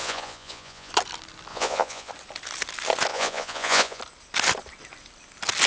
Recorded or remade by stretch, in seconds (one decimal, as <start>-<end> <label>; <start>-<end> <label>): 0.0-0.9 remade; 0.9-1.5 recorded; 1.5-2.1 remade; 2.1-3.1 recorded; 3.1-4.0 remade; 4.0-5.7 recorded